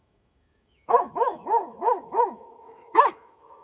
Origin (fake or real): fake